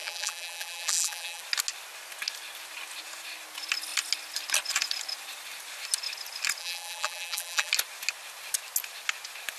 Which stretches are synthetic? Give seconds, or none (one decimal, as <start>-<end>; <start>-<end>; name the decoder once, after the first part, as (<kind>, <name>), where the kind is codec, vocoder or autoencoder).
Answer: 0.0-1.4 (vocoder, BigVGAN v2); 6.6-7.7